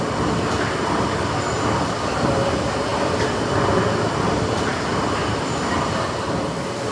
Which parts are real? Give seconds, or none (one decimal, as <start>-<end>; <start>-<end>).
0.0-6.9